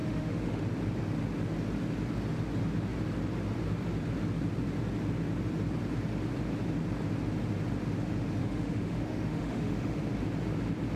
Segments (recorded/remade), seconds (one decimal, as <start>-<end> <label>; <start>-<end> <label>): 0.0-0.6 remade; 0.6-8.4 recorded; 8.4-10.0 remade; 10.0-11.0 recorded